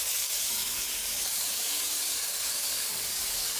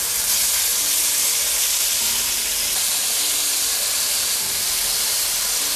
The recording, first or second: second